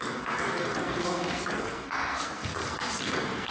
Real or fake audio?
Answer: fake